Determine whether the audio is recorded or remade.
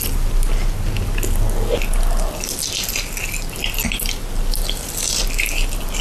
recorded